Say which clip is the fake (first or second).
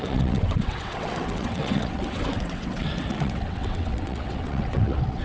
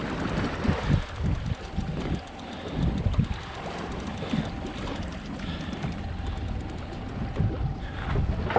first